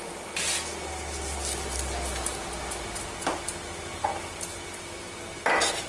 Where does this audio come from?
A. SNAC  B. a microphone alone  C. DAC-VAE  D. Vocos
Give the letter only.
B